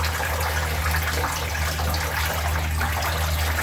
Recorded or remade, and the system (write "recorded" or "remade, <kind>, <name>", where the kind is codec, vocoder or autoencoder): recorded